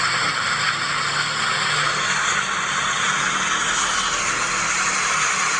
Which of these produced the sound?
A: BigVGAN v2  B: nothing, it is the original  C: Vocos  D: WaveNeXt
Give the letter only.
B